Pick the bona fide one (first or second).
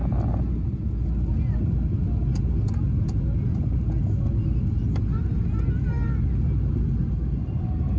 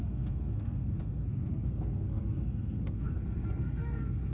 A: first